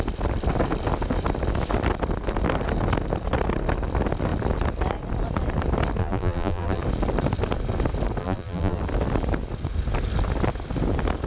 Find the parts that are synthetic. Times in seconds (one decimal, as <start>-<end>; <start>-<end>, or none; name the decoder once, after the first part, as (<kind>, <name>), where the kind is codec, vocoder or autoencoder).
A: 6.0-6.8 (vocoder, BigVGAN v2); 8.2-8.8